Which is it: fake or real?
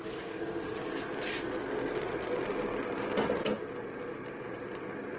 real